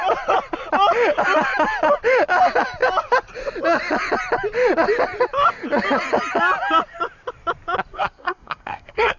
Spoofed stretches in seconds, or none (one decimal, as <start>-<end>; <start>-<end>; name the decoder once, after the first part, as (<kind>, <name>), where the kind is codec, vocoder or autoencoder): 7.9-9.2 (codec, SNAC)